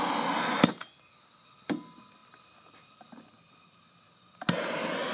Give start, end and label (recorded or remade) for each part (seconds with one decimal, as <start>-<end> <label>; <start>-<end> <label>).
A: 0.0-5.1 recorded